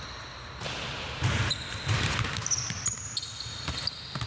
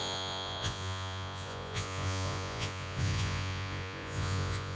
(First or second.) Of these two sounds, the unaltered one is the first